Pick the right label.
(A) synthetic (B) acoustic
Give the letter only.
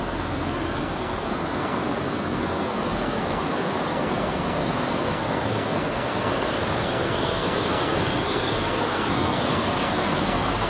A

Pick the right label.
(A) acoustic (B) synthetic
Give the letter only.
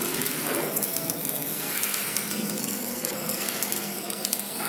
B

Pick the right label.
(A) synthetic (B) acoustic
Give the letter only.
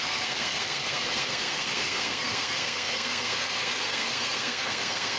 A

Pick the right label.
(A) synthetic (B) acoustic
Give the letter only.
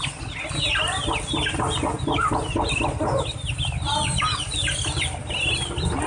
B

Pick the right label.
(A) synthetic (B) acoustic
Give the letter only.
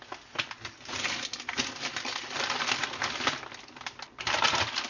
B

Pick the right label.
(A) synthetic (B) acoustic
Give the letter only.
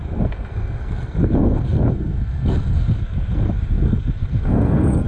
A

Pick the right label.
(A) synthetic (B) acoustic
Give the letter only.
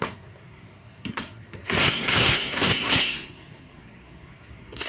A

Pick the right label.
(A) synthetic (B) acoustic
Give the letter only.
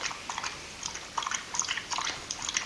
B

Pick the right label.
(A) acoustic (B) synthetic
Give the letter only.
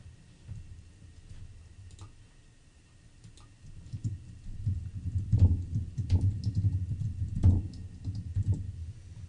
A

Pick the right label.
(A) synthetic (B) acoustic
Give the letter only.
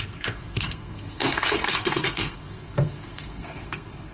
A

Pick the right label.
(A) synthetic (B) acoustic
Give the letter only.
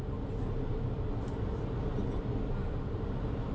B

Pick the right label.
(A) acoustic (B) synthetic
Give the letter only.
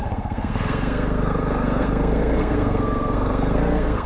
B